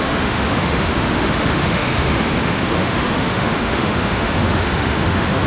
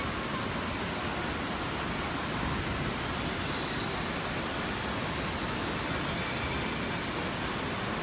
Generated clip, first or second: first